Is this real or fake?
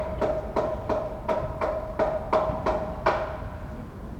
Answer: real